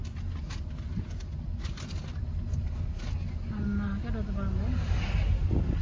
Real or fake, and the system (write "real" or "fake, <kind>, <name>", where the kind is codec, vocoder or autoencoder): real